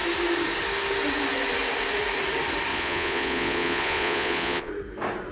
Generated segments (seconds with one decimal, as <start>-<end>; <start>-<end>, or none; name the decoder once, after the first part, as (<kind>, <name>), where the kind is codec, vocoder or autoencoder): 2.7-4.7 (vocoder, Vocos)